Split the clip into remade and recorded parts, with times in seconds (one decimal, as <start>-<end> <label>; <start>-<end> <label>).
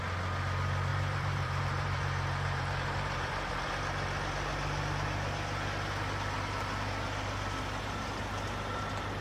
0.0-0.9 recorded; 0.9-3.7 remade; 3.7-9.2 recorded